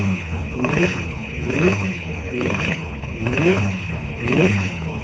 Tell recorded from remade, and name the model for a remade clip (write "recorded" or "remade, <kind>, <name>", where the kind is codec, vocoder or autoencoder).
remade, codec, HILCodec